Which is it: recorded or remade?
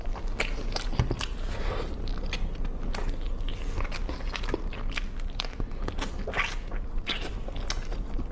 recorded